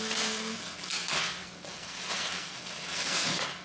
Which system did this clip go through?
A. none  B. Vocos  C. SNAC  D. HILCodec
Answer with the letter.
C